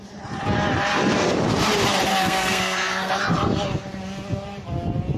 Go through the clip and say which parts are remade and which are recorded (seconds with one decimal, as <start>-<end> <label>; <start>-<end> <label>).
0.0-2.1 recorded; 2.1-3.1 remade; 3.1-5.2 recorded